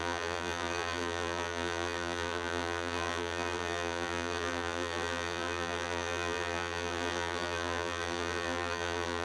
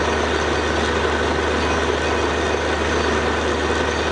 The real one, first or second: second